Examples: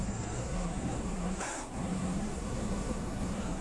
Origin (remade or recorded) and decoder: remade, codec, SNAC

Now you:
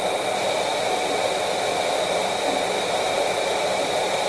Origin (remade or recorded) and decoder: recorded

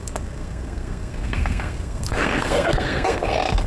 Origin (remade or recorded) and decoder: remade, codec, SNAC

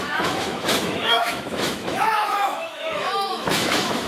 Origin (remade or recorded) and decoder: remade, autoencoder, DAC-VAE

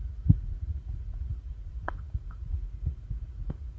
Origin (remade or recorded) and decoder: remade, vocoder, Vocos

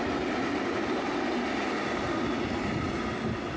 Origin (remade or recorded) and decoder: recorded